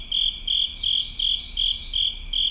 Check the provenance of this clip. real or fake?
real